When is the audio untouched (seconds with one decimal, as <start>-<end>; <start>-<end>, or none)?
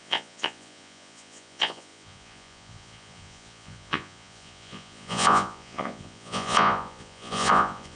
none